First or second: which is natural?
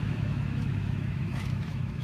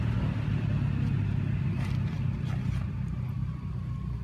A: second